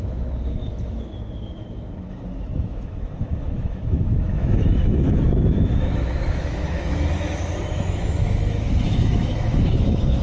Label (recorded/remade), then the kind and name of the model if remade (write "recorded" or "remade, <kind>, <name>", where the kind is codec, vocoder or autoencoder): remade, autoencoder, DAC-VAE